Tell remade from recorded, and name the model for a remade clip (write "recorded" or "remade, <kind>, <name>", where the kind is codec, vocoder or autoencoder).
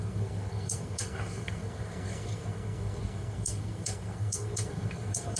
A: remade, codec, SNAC